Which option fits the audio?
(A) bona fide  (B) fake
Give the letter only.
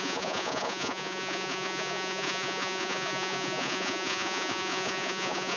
B